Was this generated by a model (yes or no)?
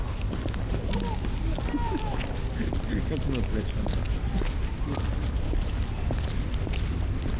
yes